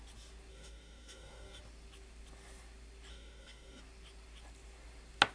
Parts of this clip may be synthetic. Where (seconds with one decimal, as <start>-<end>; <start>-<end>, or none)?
0.5-1.6; 3.1-3.8